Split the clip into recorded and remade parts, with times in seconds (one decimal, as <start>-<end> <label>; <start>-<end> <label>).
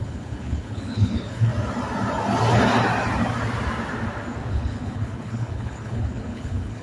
0.0-1.5 remade; 1.5-4.5 recorded; 4.5-6.8 remade